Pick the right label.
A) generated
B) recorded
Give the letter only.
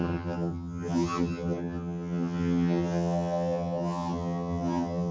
A